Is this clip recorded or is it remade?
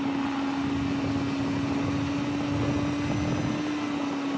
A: recorded